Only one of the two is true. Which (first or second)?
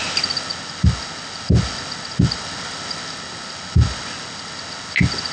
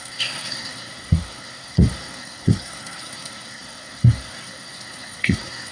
first